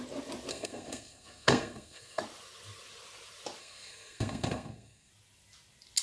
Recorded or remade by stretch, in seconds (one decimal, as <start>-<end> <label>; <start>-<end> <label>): 0.0-0.5 recorded; 0.5-2.2 remade; 2.2-3.6 recorded; 3.6-5.1 remade; 5.1-6.0 recorded